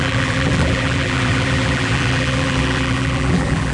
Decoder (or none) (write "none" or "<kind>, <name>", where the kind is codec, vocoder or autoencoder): vocoder, BigVGAN v2